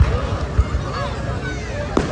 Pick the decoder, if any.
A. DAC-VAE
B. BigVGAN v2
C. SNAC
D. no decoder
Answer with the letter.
D